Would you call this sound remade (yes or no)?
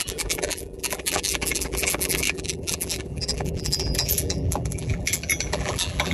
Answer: yes